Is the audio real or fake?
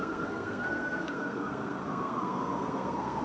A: fake